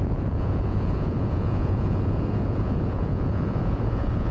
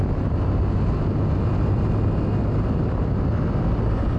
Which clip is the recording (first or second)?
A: second